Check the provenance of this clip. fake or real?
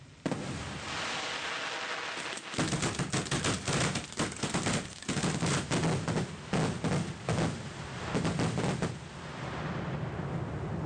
real